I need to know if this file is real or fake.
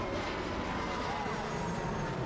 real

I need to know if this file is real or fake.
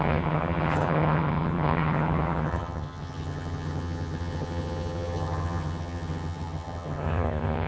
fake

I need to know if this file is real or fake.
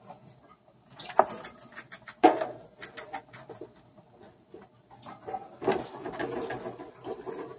real